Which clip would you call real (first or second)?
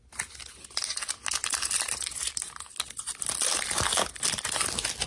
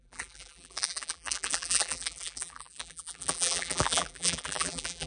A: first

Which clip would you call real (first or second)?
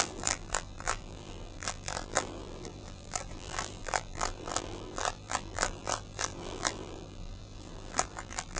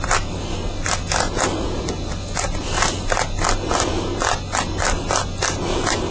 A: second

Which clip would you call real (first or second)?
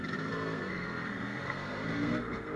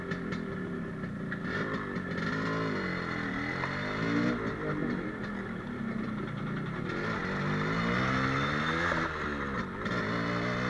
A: second